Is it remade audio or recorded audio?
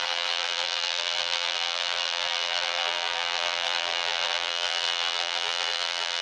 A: remade